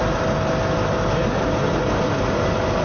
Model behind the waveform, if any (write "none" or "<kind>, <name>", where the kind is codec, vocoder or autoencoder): none